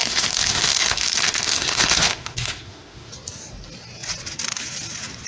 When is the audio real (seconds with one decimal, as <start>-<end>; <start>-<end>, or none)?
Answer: 3.1-5.3